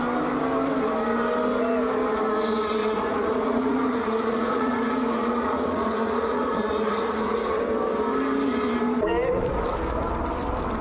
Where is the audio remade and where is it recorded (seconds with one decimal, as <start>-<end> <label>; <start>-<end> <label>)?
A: 0.0-2.8 recorded; 2.8-7.6 remade; 7.6-10.8 recorded